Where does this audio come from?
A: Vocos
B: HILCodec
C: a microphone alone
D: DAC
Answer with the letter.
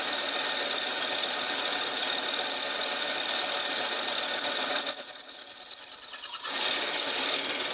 C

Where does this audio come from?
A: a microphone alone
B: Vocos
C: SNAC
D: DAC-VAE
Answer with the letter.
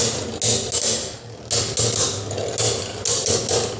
A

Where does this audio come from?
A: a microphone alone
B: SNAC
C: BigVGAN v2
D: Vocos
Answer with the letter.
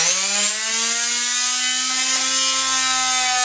A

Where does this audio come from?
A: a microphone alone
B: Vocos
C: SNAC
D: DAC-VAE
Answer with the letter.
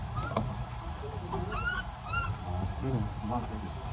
A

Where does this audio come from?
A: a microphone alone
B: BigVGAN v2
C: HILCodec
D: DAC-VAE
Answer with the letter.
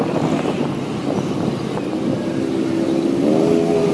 A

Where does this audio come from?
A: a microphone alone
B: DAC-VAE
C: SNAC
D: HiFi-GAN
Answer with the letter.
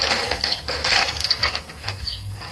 C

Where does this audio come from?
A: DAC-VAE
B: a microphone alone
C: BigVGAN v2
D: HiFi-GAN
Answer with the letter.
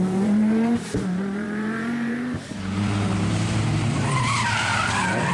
C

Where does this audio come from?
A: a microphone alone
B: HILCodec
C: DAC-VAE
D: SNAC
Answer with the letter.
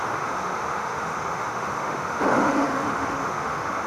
C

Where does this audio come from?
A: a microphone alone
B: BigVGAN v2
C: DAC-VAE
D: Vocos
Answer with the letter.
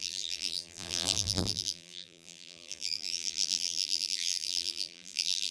B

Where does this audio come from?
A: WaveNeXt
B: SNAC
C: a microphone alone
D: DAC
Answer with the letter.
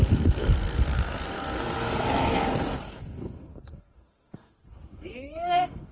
B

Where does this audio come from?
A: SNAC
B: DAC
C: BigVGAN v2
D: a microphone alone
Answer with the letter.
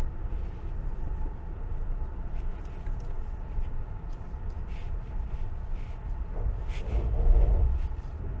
D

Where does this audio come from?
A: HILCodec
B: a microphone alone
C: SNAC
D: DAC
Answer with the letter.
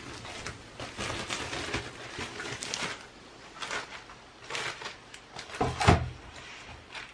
B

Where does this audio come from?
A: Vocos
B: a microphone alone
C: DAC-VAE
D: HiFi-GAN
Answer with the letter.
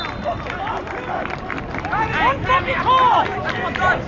B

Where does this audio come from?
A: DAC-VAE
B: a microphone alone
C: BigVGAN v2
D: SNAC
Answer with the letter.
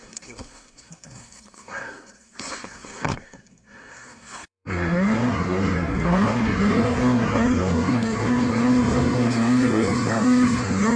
D